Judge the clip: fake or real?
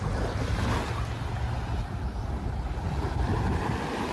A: real